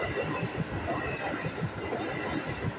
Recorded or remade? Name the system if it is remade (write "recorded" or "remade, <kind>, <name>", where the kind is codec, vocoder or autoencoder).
recorded